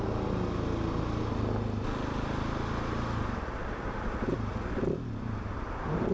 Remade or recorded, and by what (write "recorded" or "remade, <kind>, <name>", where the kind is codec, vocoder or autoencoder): recorded